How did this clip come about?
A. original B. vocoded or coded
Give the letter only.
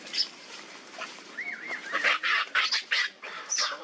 B